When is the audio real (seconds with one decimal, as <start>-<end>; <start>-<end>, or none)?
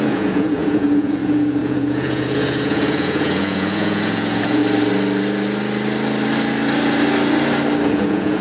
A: 4.6-7.9